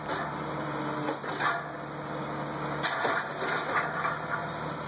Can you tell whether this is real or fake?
real